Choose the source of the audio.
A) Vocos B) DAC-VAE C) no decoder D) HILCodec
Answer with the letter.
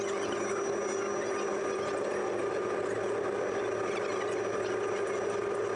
C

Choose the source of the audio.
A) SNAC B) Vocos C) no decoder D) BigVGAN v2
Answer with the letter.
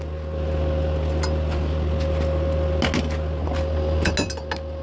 C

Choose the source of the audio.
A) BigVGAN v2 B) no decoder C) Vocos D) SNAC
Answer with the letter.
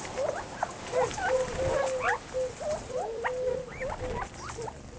B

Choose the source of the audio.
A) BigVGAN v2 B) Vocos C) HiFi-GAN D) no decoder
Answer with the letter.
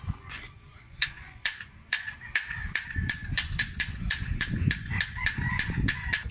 B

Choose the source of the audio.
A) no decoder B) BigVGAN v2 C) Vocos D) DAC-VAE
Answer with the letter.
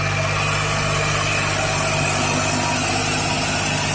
A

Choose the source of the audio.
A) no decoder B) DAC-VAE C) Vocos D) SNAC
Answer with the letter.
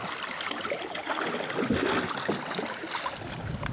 A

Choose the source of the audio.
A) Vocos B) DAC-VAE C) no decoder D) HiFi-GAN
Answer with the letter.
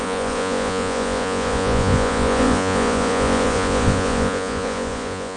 A